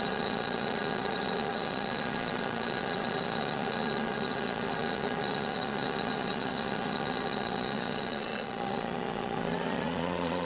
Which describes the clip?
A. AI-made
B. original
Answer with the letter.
A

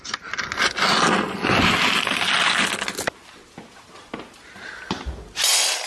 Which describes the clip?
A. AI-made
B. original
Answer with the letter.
B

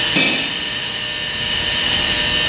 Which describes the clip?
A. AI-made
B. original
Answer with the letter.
B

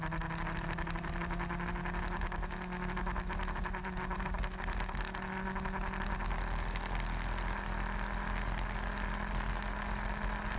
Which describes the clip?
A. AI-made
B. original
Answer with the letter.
B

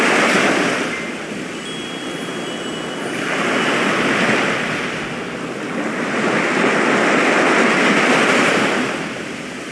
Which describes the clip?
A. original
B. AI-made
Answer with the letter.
A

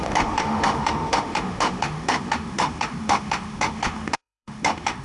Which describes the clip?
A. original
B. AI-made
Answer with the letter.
B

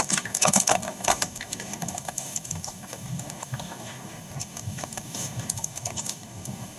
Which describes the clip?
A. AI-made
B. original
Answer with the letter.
A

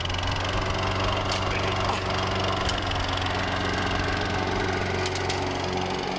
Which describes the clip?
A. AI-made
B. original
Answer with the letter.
B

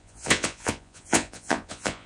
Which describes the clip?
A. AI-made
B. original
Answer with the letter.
A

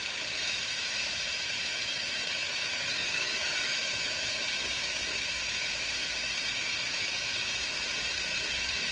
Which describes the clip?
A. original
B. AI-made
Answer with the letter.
B